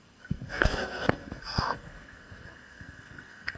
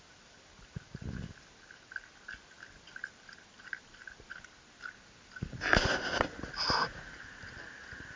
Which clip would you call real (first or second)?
second